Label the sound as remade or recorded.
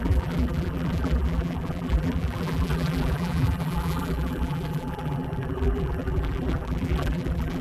remade